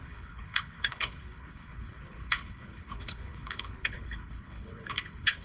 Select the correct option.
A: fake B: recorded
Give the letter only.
A